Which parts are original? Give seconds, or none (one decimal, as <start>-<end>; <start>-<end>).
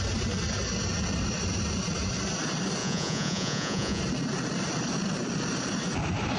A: 0.0-2.8; 4.0-6.4